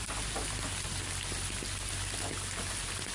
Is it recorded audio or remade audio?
recorded